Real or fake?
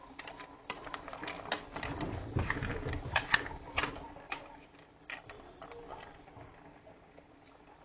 fake